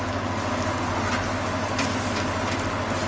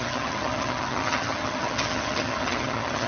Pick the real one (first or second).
first